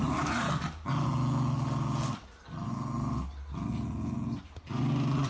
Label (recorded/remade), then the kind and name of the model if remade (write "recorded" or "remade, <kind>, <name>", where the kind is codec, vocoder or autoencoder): recorded